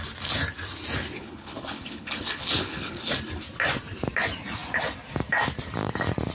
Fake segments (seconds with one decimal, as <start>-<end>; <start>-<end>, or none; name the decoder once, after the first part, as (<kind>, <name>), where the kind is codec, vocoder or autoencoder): 1.2-3.1 (codec, HILCodec)